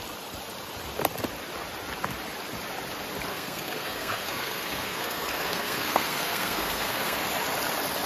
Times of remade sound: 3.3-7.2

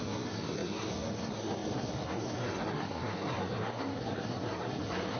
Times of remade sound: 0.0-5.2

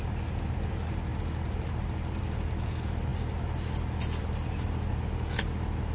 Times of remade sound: none

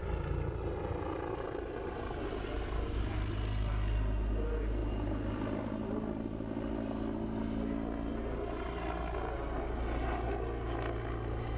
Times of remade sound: none

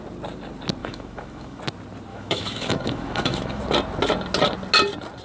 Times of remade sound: 0.8-1.6; 2.1-3.6

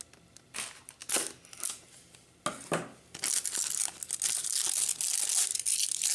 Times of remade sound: none